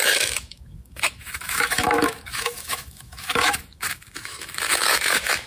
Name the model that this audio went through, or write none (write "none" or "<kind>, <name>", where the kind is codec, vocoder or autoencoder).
autoencoder, DAC-VAE